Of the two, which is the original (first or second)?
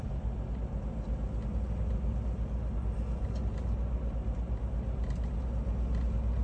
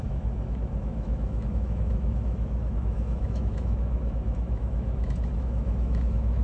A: first